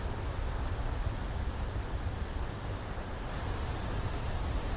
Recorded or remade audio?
recorded